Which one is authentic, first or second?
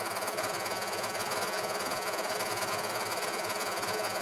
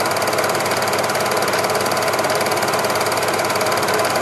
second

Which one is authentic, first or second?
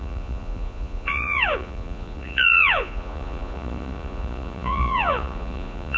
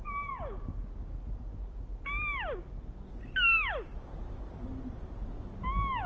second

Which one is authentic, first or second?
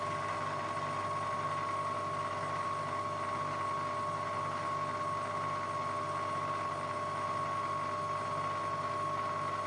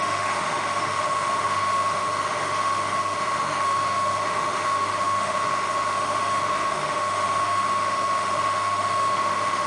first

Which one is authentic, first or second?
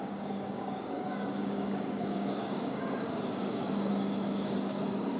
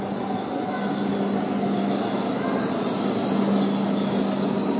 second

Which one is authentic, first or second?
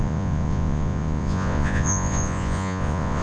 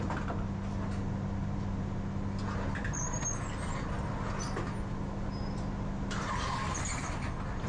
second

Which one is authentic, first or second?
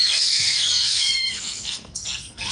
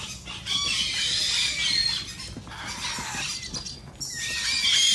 second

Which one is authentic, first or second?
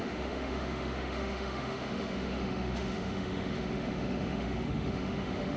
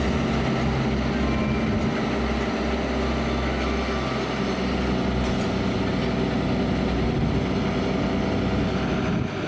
second